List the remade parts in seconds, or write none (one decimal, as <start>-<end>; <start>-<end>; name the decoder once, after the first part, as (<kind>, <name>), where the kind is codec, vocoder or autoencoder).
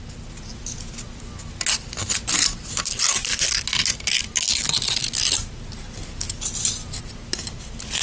none